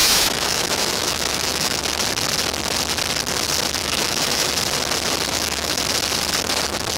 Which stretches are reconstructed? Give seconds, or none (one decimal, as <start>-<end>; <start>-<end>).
0.0-1.8; 3.8-4.5; 5.3-5.8